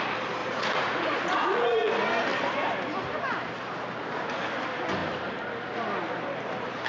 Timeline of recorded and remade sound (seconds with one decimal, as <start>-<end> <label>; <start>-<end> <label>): 0.0-0.4 recorded; 0.4-1.9 remade; 1.9-6.9 recorded